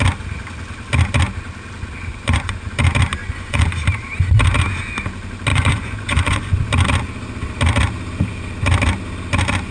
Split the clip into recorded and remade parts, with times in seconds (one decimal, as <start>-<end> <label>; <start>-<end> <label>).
0.0-2.1 recorded; 2.1-2.6 remade; 2.6-3.2 recorded; 3.2-3.7 remade; 3.7-5.5 recorded; 5.5-6.6 remade; 6.6-9.7 recorded